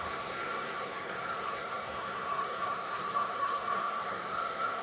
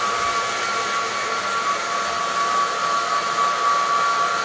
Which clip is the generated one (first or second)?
first